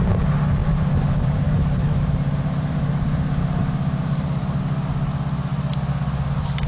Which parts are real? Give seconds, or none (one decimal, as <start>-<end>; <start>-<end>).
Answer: 0.0-0.6; 4.6-6.7